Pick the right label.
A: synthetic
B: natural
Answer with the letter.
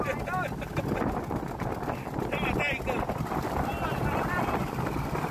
B